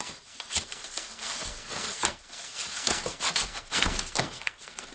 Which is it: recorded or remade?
remade